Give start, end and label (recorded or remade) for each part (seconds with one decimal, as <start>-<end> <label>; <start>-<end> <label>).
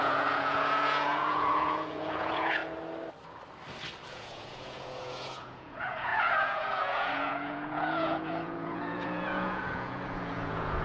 0.0-2.6 remade; 2.6-4.1 recorded; 4.1-10.8 remade